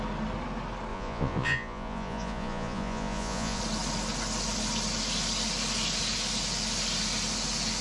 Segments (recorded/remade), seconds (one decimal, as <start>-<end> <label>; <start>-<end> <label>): 0.0-0.9 recorded; 0.9-3.6 remade; 3.6-7.8 recorded